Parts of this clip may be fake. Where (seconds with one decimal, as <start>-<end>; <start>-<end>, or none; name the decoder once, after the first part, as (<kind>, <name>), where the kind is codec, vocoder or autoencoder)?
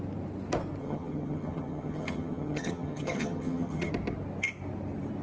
0.8-3.9 (vocoder, HiFi-GAN)